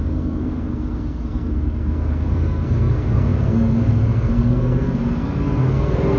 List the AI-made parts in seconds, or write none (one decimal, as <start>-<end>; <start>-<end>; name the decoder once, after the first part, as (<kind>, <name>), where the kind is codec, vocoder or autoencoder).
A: 0.0-6.2 (codec, SNAC)